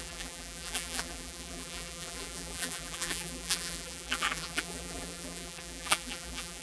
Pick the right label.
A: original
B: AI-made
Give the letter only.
B